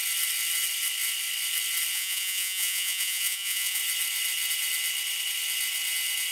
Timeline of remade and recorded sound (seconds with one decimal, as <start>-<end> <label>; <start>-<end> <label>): 0.0-1.9 recorded; 1.9-3.8 remade; 3.8-6.3 recorded